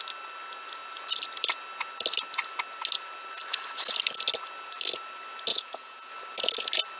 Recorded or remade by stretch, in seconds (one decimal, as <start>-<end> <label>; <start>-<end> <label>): 0.0-5.5 recorded; 5.5-6.1 remade; 6.1-7.0 recorded